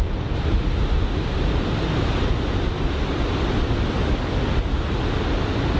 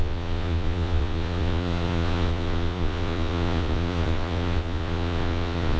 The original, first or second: first